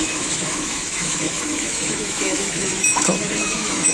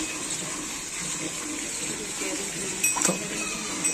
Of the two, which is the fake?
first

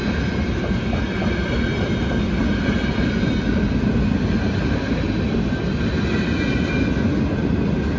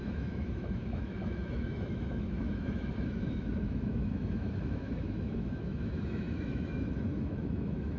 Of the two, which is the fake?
second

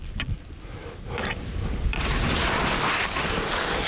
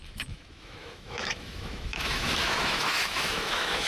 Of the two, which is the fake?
second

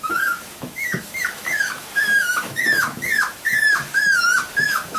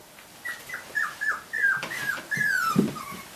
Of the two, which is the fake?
first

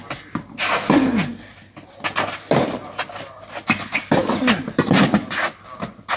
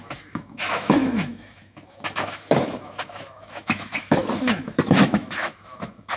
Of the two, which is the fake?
second